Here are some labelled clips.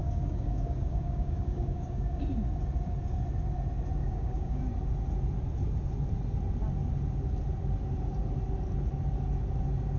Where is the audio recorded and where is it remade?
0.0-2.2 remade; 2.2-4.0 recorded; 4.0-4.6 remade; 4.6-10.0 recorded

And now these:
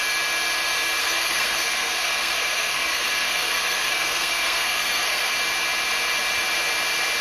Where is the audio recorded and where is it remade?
0.0-1.0 recorded; 1.0-5.3 remade; 5.3-7.2 recorded

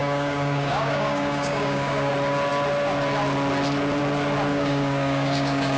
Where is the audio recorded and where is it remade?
0.0-2.1 remade; 2.1-4.5 recorded; 4.5-5.8 remade

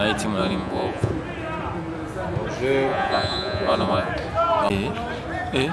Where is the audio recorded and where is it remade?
0.0-0.4 recorded; 0.4-1.1 remade; 1.1-2.9 recorded; 2.9-4.1 remade; 4.1-5.7 recorded

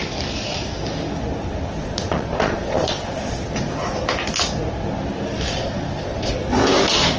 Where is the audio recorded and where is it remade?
0.0-1.8 recorded; 1.8-3.9 remade; 3.9-5.5 recorded; 5.5-6.3 remade; 6.3-7.2 recorded

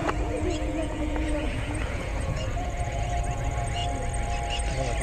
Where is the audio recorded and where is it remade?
0.0-3.8 remade; 3.8-5.0 recorded

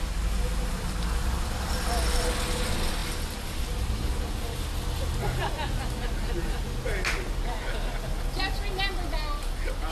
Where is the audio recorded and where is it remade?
0.0-9.9 recorded

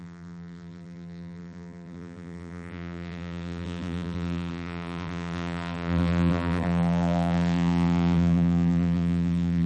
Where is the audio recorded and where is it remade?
0.0-9.7 remade